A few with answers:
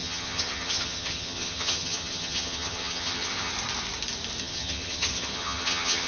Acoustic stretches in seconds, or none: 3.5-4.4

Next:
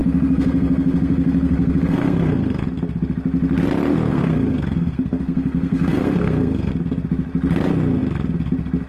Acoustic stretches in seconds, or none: 2.6-4.1; 6.7-8.9

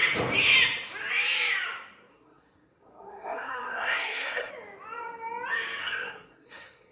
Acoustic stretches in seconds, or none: 0.0-2.1; 4.5-5.8

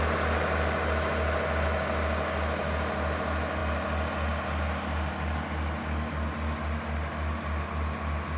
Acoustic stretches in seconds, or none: 0.0-8.4